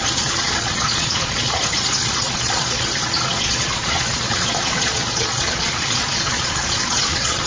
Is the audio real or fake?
fake